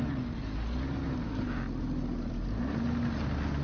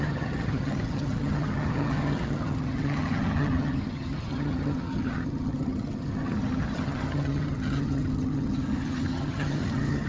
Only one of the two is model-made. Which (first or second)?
second